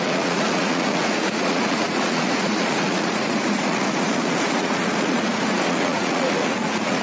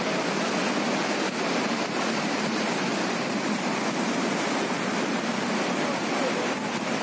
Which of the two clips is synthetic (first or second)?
first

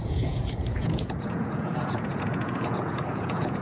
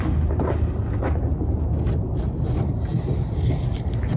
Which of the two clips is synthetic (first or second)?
first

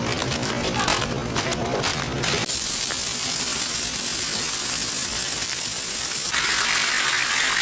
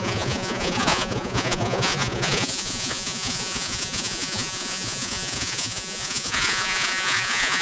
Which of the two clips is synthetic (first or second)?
second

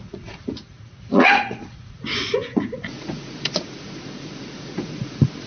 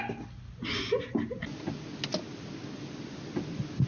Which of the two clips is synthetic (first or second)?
first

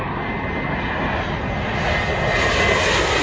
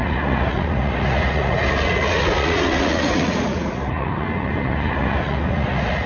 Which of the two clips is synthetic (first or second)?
second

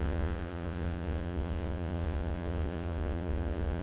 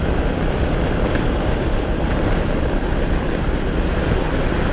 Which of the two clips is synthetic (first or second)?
first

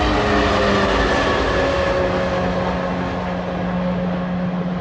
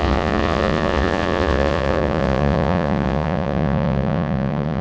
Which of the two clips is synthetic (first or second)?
second